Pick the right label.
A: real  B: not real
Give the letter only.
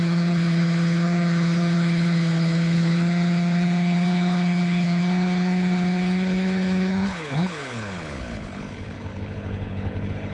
B